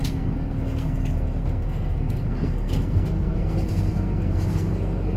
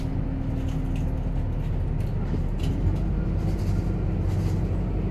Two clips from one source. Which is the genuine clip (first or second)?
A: second